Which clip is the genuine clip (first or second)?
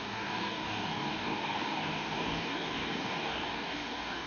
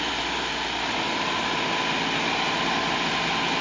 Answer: second